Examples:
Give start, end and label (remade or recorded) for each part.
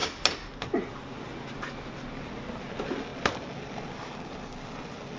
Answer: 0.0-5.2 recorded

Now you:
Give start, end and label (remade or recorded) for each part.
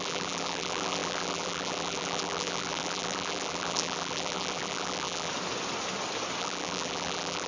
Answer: 0.0-5.3 remade; 5.3-6.4 recorded; 6.4-7.5 remade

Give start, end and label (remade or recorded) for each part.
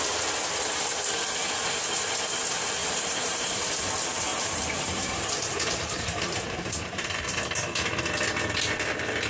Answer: 0.0-2.8 recorded; 2.8-3.8 remade; 3.8-4.3 recorded; 4.3-8.0 remade; 8.0-9.3 recorded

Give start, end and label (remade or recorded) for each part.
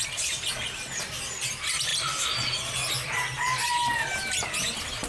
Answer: 0.0-5.1 recorded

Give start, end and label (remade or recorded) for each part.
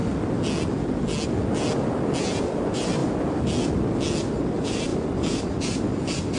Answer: 0.0-2.2 recorded; 2.2-3.0 remade; 3.0-4.2 recorded; 4.2-6.4 remade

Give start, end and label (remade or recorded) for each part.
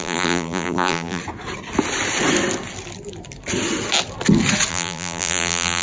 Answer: 0.0-1.2 remade; 1.2-4.7 recorded; 4.7-5.8 remade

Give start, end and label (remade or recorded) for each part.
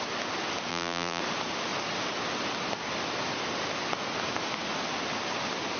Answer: 0.0-0.7 recorded; 0.7-1.2 remade; 1.2-5.8 recorded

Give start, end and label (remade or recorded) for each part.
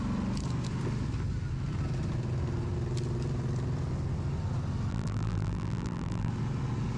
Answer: 0.0-4.9 recorded; 4.9-6.3 remade; 6.3-7.0 recorded